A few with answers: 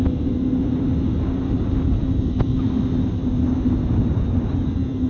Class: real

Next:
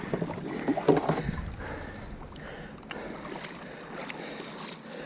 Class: real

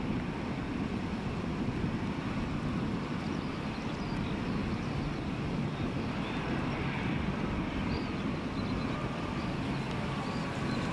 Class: real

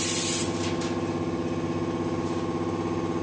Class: real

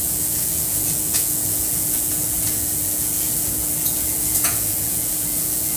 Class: fake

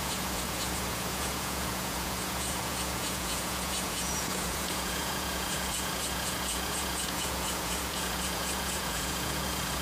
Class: fake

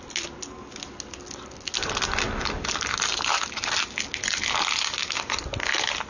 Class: real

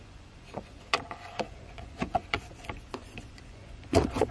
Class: fake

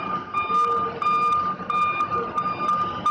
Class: real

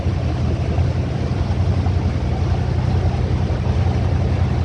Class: real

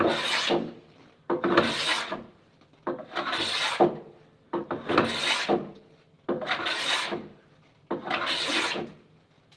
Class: real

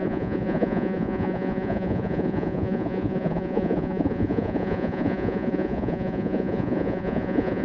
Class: fake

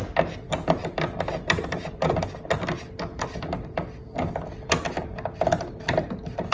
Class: real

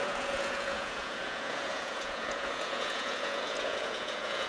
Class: fake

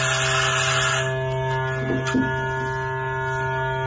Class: real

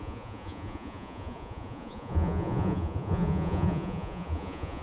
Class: fake